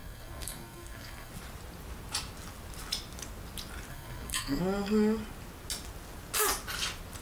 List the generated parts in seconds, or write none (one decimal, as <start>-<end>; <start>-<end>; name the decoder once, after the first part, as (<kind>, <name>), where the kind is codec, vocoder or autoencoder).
0.0-1.3 (codec, SNAC); 3.9-4.6